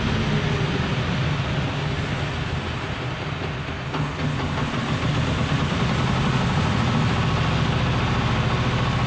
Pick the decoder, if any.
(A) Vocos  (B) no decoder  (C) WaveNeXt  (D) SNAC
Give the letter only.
B